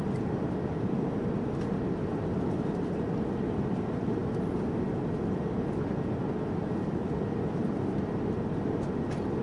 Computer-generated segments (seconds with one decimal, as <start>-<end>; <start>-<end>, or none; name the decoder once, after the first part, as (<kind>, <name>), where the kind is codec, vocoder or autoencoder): none